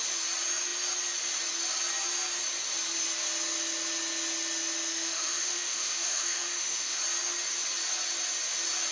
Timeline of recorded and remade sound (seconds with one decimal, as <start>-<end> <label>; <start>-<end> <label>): 0.0-4.9 recorded; 4.9-7.0 remade; 7.0-8.9 recorded